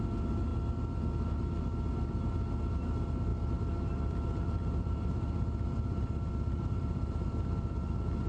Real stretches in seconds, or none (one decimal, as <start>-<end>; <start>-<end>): 0.0-3.3